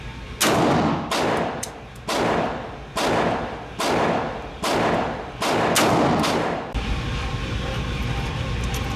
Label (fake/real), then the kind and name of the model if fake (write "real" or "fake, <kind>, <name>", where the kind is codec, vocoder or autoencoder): real